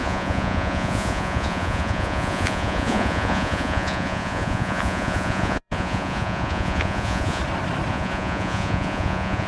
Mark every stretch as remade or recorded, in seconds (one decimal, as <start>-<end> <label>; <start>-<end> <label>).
0.0-7.4 remade; 7.4-7.9 recorded; 7.9-9.5 remade